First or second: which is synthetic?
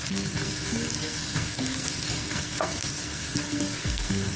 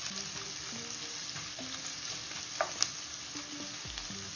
first